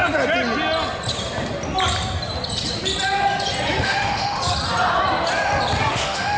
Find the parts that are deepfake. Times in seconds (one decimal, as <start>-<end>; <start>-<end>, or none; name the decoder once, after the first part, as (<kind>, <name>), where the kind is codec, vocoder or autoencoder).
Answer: 3.8-4.4 (autoencoder, DAC-VAE); 5.9-6.4